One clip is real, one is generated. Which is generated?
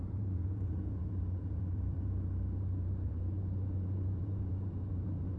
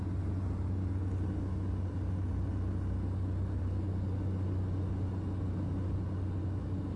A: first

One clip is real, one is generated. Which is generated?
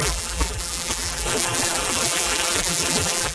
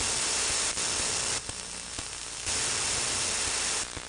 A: first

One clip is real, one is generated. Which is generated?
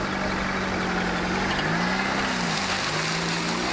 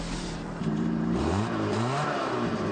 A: second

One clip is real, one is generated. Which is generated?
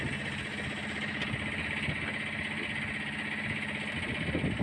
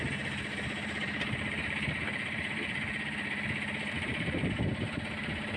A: second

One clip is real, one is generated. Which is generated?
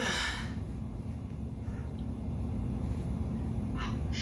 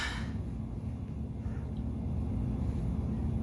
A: first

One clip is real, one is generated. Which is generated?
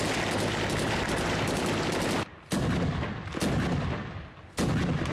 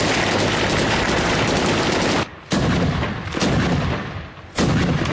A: second